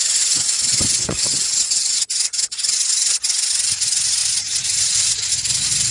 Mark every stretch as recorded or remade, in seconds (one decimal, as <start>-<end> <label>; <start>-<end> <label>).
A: 0.0-0.7 recorded; 0.7-1.3 remade; 1.3-5.9 recorded